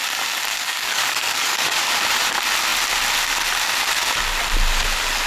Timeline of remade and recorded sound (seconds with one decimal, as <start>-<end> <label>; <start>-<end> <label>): 0.0-0.5 recorded; 0.5-1.9 remade; 1.9-5.3 recorded